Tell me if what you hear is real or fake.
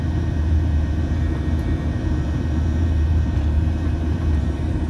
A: fake